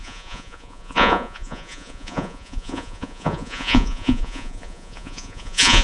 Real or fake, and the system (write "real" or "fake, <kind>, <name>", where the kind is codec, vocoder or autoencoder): fake, vocoder, Vocos